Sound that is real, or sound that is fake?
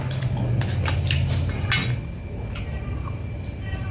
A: real